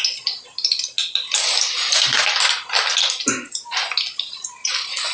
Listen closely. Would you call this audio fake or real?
real